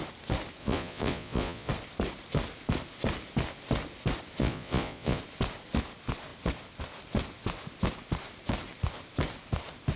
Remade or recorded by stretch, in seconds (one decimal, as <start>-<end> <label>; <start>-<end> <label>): 0.0-0.6 recorded; 0.6-1.7 remade; 1.7-4.4 recorded; 4.4-5.2 remade; 5.2-10.0 recorded